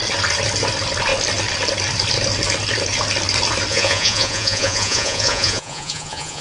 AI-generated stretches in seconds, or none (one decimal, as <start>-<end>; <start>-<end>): 3.7-6.4